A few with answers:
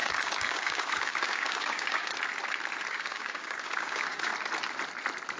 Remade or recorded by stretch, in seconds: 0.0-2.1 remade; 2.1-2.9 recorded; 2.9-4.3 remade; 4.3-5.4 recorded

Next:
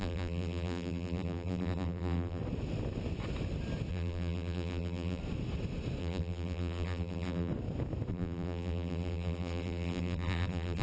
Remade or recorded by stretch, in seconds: 0.0-2.4 remade; 2.4-3.9 recorded; 3.9-5.2 remade; 5.2-6.0 recorded; 6.0-7.5 remade; 7.5-8.1 recorded; 8.1-10.8 remade

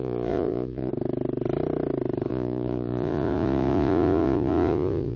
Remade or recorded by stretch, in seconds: 0.0-0.9 remade; 0.9-2.3 recorded; 2.3-5.2 remade